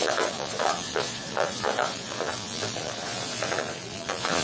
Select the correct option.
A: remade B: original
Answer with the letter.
A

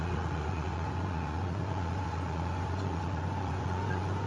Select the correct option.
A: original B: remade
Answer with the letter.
B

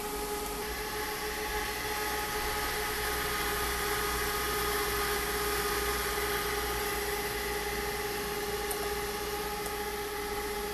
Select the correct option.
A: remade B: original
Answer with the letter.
B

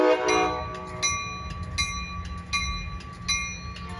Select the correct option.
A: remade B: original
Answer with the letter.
B